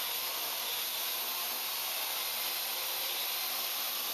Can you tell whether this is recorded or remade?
recorded